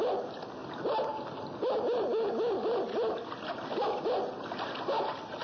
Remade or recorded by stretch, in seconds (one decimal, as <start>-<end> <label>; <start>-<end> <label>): 0.0-5.4 recorded